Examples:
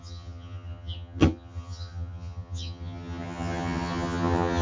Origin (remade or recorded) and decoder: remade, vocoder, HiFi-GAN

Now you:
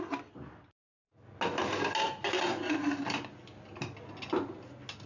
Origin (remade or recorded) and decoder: recorded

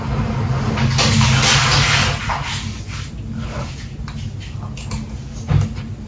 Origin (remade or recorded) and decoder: recorded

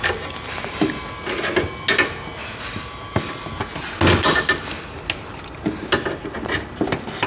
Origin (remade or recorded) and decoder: recorded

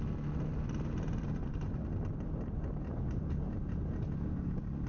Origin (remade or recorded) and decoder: recorded